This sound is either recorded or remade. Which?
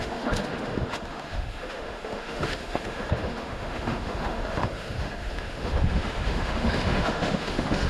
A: remade